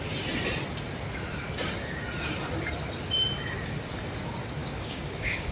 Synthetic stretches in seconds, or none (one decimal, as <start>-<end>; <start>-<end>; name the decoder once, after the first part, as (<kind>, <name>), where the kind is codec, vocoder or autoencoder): 4.6-5.5 (codec, DAC)